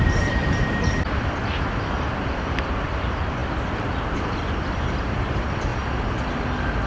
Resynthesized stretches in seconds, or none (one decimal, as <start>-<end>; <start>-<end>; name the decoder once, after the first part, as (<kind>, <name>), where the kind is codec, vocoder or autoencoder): 0.0-0.4 (vocoder, BigVGAN v2); 2.1-5.7